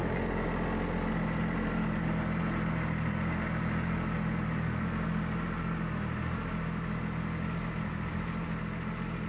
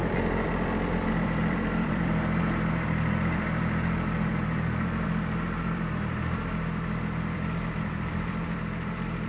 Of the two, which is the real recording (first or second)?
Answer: first